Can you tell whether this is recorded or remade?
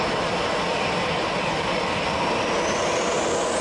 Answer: recorded